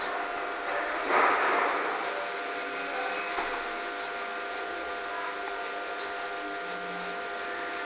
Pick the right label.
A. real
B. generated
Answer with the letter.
A